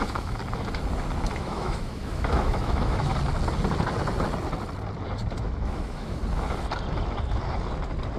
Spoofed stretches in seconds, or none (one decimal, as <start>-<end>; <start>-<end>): 0.0-0.4; 1.4-3.1; 5.4-6.2